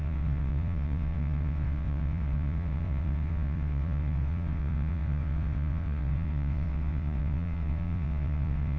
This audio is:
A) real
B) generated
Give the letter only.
B